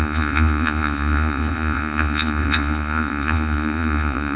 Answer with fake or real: fake